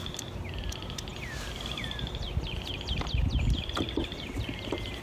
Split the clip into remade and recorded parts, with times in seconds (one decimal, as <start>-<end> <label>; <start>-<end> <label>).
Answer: 0.0-5.0 recorded